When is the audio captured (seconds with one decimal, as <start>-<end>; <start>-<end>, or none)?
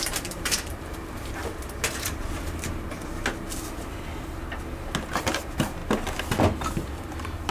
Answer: 1.4-5.2; 5.8-6.7